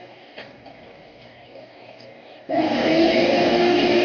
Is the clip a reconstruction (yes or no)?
yes